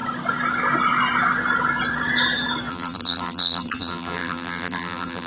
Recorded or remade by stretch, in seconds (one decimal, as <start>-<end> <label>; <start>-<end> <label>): 0.0-2.7 recorded; 2.7-5.3 remade